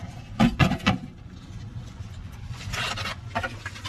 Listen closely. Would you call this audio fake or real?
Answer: fake